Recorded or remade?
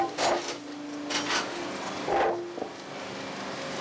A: recorded